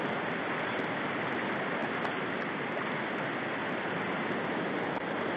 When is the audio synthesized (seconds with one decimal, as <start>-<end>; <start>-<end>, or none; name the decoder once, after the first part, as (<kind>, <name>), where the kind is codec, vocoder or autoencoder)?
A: none